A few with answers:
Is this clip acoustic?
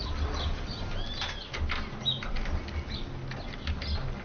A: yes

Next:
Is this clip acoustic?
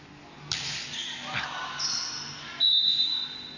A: yes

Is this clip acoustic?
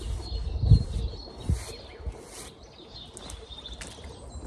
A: yes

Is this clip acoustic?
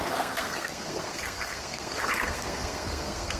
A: no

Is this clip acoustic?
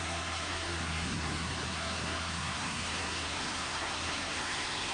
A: no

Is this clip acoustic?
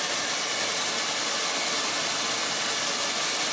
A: yes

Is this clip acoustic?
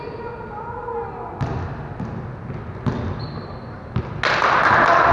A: yes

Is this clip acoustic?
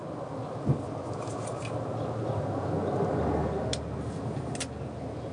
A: yes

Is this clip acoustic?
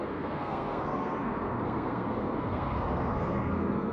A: no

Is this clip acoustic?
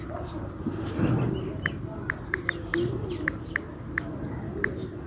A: yes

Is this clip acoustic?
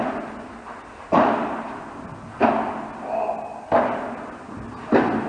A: yes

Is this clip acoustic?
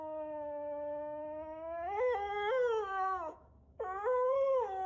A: no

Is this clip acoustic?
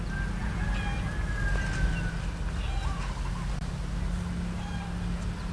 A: yes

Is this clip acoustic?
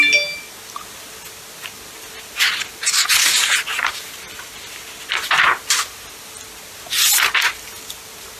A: yes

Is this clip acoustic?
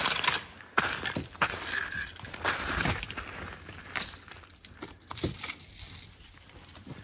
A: yes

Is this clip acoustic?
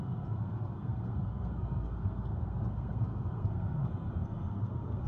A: no